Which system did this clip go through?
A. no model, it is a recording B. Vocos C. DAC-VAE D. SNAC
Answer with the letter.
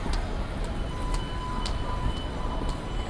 A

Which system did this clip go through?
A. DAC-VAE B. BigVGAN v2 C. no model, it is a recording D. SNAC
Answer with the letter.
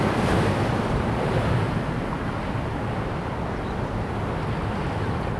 C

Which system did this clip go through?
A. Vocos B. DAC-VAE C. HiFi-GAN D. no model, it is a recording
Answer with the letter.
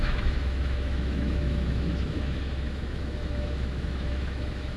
B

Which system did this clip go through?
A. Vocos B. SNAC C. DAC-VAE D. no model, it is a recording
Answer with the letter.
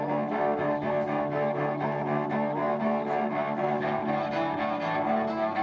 D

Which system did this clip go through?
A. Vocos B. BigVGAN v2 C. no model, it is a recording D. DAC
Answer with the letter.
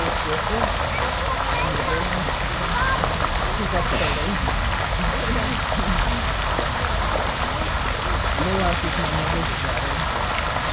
C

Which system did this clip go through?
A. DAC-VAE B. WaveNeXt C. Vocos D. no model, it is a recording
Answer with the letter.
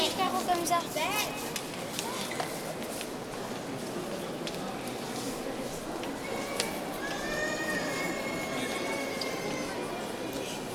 D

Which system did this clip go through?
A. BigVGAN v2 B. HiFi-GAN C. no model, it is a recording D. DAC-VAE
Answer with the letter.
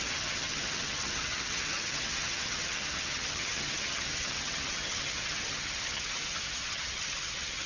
B